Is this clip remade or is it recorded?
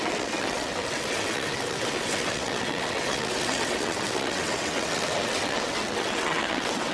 remade